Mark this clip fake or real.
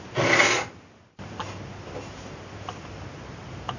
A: real